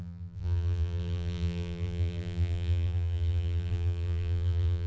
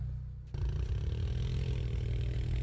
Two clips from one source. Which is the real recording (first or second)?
second